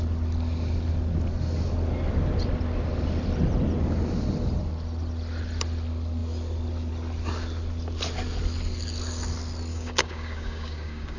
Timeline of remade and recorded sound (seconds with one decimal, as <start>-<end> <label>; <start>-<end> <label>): 0.0-9.7 recorded; 9.7-11.2 remade